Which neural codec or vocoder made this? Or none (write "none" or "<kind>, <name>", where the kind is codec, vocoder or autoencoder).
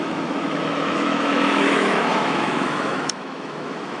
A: autoencoder, DAC-VAE